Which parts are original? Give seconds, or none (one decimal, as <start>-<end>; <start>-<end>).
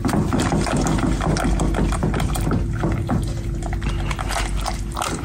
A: 0.0-5.2